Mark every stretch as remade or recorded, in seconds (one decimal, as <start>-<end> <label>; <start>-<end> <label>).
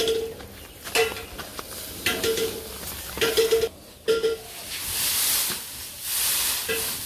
0.0-7.1 recorded